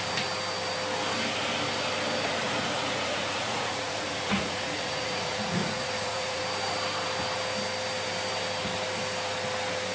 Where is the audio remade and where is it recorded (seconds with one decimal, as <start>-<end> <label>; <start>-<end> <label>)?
0.0-2.4 recorded; 2.4-6.4 remade; 6.4-9.9 recorded

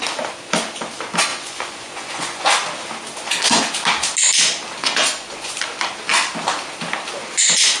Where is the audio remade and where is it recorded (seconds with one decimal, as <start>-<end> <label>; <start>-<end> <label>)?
0.0-1.3 recorded; 1.3-2.5 remade; 2.5-4.8 recorded; 4.8-5.6 remade; 5.6-7.8 recorded

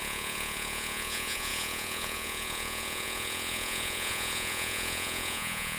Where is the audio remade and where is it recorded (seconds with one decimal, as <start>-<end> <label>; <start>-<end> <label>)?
0.0-5.8 remade

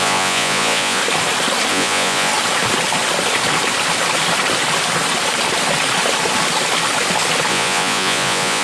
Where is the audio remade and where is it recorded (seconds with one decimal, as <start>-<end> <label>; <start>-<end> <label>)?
0.0-1.0 remade; 1.0-1.7 recorded; 1.7-2.3 remade; 2.3-7.5 recorded; 7.5-8.6 remade

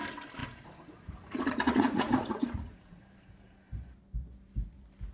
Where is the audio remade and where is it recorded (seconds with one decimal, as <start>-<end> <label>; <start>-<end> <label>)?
0.0-0.4 recorded; 0.4-3.0 remade; 3.0-5.1 recorded